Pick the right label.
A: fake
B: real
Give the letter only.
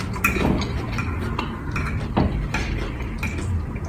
B